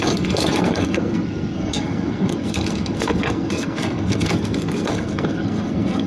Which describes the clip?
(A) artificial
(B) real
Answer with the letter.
A